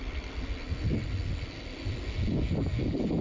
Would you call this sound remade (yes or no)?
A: no